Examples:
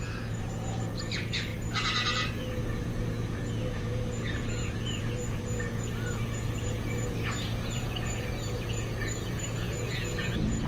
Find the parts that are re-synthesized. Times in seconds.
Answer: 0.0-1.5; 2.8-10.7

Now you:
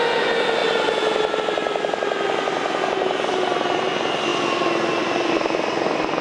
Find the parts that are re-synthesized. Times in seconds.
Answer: none